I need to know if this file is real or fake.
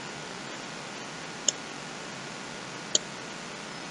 real